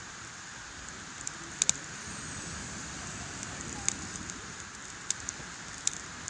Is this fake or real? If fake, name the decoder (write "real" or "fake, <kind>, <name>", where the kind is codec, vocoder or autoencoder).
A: real